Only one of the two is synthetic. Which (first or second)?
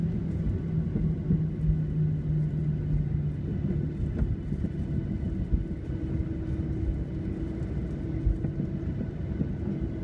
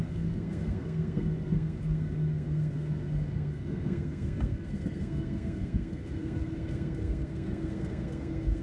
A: second